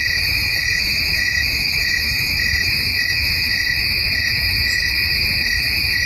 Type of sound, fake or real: fake